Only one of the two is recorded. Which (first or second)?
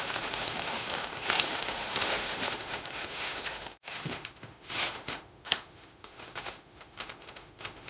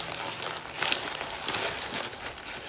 second